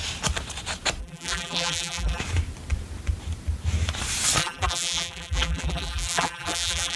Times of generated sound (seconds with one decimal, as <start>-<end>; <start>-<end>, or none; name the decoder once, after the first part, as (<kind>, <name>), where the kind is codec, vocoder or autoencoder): 1.0-2.2 (vocoder, BigVGAN v2); 4.4-7.0